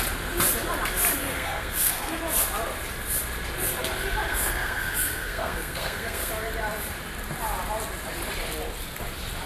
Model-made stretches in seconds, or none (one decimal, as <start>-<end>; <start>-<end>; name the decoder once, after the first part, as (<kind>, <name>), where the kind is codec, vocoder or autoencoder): 1.2-2.2 (codec, SNAC); 4.3-6.3